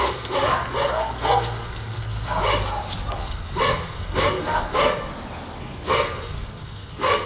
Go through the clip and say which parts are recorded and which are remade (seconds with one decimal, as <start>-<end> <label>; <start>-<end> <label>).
0.0-2.4 remade; 2.4-3.1 recorded; 3.1-4.9 remade; 4.9-5.6 recorded; 5.6-7.3 remade